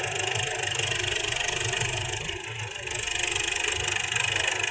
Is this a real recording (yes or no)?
yes